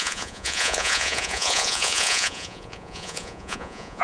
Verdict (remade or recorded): remade